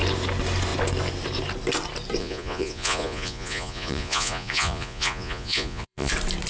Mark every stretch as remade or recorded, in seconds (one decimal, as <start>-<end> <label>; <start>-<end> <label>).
0.0-2.2 recorded; 2.2-6.1 remade; 6.1-6.5 recorded